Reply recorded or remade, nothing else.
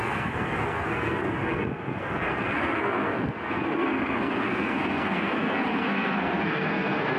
remade